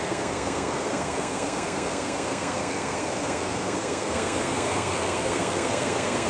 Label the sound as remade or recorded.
remade